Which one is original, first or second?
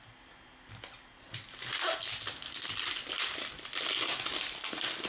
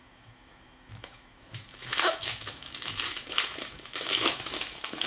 first